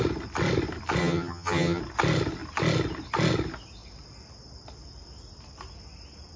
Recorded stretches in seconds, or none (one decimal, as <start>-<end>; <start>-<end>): 0.0-1.0; 1.8-6.4